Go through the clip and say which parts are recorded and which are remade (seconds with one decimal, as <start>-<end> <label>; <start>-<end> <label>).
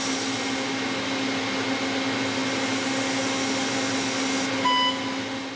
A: 0.0-5.6 recorded